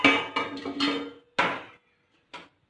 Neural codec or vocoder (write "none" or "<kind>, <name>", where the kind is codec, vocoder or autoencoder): none